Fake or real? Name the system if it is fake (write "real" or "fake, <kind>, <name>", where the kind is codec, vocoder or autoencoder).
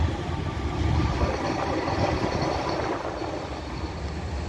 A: fake, vocoder, BigVGAN v2